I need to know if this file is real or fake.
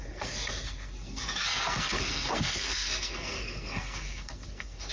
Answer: fake